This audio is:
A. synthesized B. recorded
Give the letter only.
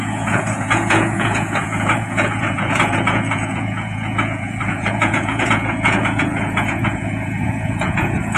A